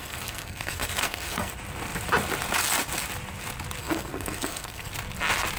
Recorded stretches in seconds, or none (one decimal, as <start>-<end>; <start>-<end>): 1.5-3.8; 4.9-5.6